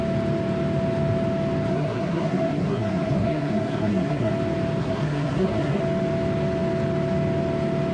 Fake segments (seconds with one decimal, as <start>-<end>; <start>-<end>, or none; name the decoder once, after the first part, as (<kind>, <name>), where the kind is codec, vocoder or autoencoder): 1.7-4.3 (codec, SNAC); 4.8-5.8